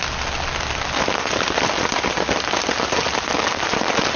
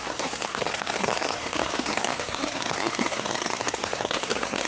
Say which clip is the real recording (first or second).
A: first